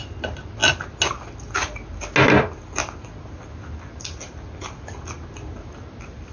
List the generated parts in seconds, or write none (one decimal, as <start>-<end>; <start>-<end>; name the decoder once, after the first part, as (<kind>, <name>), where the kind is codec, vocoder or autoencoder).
none